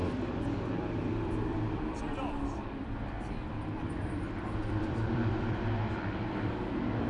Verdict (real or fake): fake